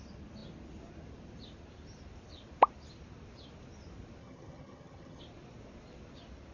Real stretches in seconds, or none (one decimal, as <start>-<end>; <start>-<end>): 0.0-4.2; 5.2-6.5

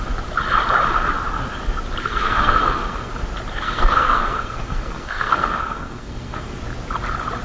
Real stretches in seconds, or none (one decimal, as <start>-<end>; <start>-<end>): 0.0-2.0; 3.1-3.5; 6.6-7.4

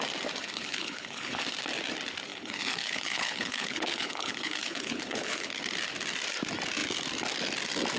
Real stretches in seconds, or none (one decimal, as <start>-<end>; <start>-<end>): 0.0-0.4; 1.4-2.3; 5.5-8.0

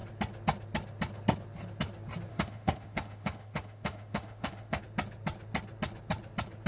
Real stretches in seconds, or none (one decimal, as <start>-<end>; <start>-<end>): 0.0-2.3; 4.8-6.7

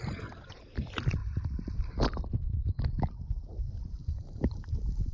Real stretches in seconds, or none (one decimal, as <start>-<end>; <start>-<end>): 1.2-2.9; 4.0-4.6

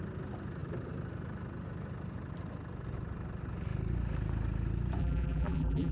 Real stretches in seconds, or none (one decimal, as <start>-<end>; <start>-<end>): 0.0-5.0

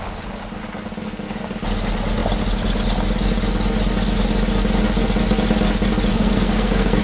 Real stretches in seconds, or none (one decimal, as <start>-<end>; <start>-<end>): 0.0-6.1

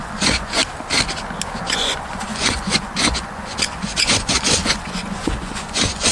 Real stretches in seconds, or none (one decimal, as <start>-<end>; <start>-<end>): 0.6-1.6